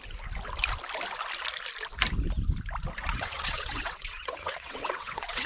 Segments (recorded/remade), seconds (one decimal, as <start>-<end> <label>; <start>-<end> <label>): 0.0-3.0 recorded; 3.0-5.5 remade

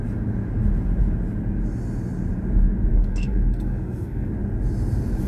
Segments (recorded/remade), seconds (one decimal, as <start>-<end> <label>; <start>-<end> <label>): 0.0-2.9 recorded; 2.9-4.3 remade; 4.3-5.3 recorded

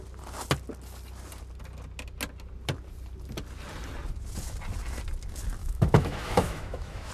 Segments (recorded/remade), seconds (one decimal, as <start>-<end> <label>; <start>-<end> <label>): 0.0-5.6 recorded; 5.6-7.1 remade

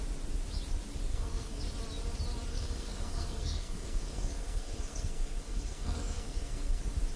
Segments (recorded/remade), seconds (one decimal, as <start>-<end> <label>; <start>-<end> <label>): 0.0-1.1 recorded; 1.1-1.6 remade; 1.6-2.5 recorded; 2.5-6.8 remade; 6.8-7.2 recorded

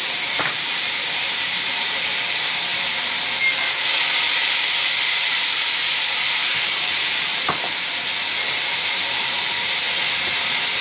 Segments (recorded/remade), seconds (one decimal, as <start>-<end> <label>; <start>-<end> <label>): 0.0-2.7 remade; 2.7-5.1 recorded; 5.1-8.1 remade; 8.1-8.6 recorded; 8.6-9.8 remade; 9.8-10.8 recorded

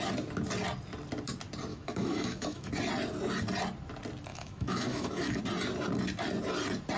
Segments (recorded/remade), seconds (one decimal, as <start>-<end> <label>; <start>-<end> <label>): 0.0-1.7 recorded; 1.7-2.7 remade; 2.7-4.3 recorded; 4.3-5.4 remade; 5.4-7.0 recorded

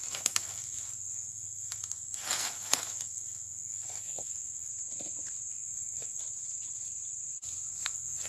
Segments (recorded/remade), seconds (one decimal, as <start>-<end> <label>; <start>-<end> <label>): 0.0-4.7 remade; 4.7-5.5 recorded; 5.5-6.2 remade; 6.2-7.7 recorded; 7.7-8.3 remade

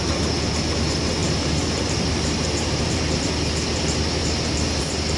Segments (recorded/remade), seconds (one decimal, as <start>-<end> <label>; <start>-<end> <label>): 0.0-1.2 recorded; 1.2-3.3 remade; 3.3-4.2 recorded; 4.2-4.8 remade; 4.8-5.2 recorded